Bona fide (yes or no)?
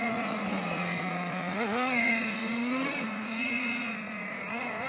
no